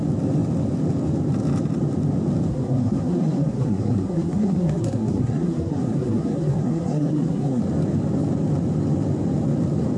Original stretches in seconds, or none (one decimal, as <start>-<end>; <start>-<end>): 0.0-2.5; 7.6-10.0